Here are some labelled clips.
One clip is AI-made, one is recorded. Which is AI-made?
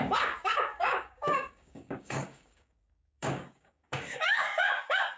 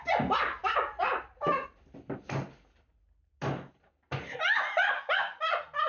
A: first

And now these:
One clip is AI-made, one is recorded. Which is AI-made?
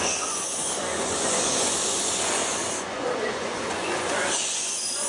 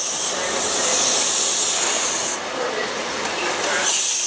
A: first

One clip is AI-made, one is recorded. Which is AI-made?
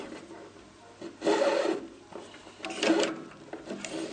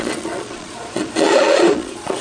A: second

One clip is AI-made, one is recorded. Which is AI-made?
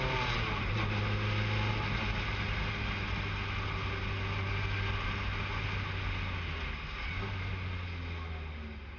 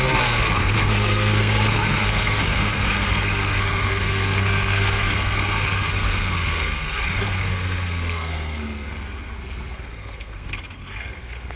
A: second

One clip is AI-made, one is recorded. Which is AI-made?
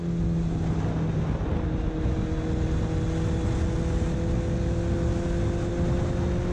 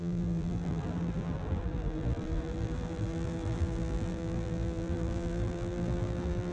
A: second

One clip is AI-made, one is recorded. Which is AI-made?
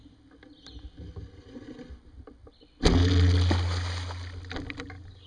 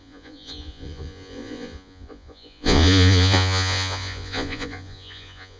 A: second